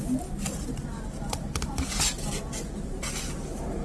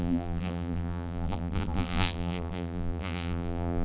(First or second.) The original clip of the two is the first